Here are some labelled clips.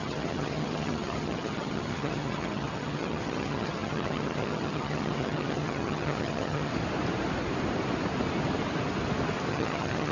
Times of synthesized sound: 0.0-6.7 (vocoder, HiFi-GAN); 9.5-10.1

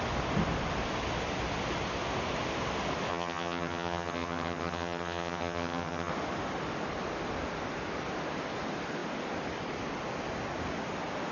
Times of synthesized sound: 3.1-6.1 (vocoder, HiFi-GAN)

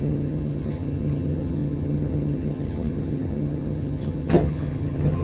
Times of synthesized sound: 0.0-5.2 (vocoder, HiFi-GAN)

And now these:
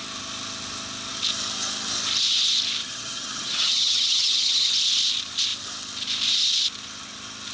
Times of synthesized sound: 2.8-4.7 (vocoder, HiFi-GAN)

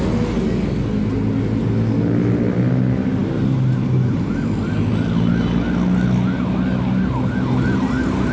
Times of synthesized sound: none